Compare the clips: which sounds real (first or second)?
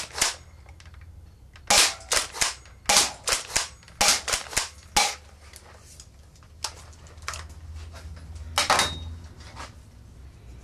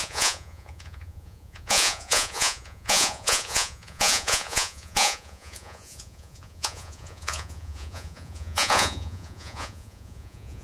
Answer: first